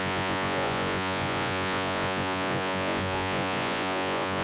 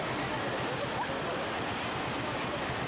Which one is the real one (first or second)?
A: second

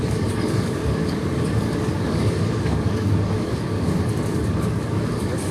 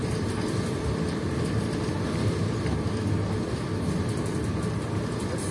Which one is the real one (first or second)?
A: second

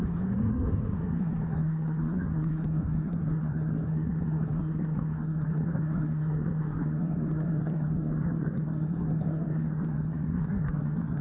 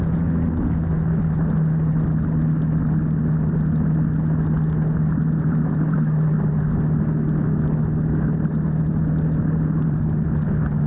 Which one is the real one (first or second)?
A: second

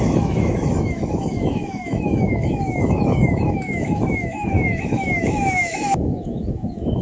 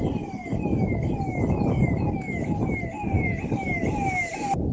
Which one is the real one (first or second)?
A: second